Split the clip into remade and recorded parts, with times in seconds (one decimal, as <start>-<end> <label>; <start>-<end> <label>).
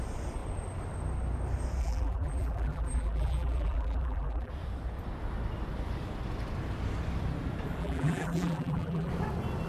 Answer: 0.0-1.8 recorded; 1.8-4.5 remade; 4.5-7.8 recorded; 7.8-9.1 remade; 9.1-9.7 recorded